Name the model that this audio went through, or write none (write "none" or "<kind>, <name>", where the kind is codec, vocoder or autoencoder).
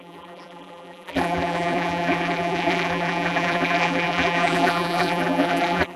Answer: vocoder, BigVGAN v2